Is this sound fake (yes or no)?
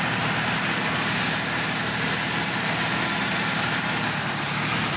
no